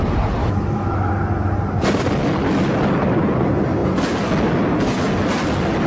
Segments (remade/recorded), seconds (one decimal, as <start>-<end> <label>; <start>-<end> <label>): 0.0-0.4 recorded; 0.4-1.1 remade; 1.1-5.9 recorded